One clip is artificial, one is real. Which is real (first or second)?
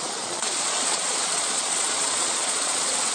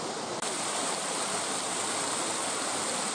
second